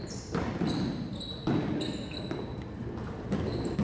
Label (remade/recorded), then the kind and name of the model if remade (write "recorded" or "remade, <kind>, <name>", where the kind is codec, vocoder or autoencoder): recorded